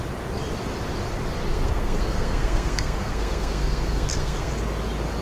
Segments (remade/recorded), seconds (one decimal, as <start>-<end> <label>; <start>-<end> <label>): 0.0-1.5 recorded; 1.5-4.5 remade; 4.5-5.2 recorded